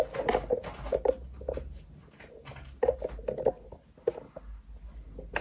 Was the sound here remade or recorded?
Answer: recorded